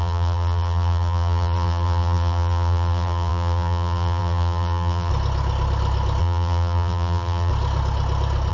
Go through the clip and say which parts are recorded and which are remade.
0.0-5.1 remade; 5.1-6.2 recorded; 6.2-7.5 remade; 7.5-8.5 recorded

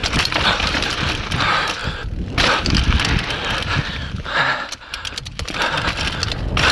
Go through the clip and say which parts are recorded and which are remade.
0.0-1.1 remade; 1.1-6.7 recorded

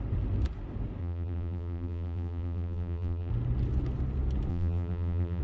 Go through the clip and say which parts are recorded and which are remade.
0.0-1.0 recorded; 1.0-3.3 remade; 3.3-4.5 recorded; 4.5-5.4 remade

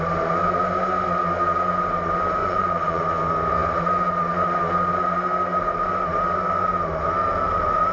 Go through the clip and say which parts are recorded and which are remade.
0.0-2.4 recorded; 2.4-3.0 remade; 3.0-7.9 recorded